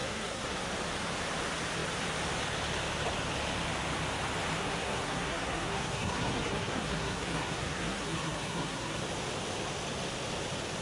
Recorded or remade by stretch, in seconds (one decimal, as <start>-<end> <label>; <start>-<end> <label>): 0.0-0.6 remade; 0.6-4.6 recorded; 4.6-9.0 remade; 9.0-10.8 recorded

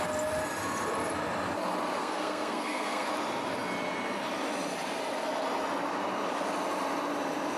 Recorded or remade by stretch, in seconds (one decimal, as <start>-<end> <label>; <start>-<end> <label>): 0.0-2.0 recorded; 2.0-3.1 remade; 3.1-7.6 recorded

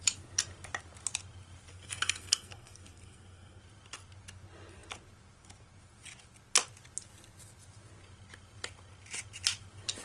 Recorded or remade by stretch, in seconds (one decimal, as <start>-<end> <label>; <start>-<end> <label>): 0.0-1.7 recorded; 1.7-3.6 remade; 3.6-10.0 recorded